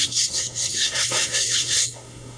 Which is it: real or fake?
fake